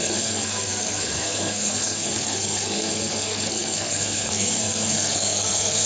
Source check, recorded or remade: remade